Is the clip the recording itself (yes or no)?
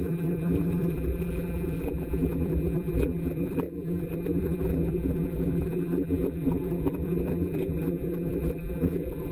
no